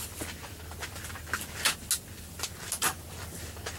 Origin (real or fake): real